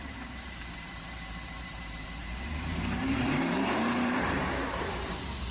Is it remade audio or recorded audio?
remade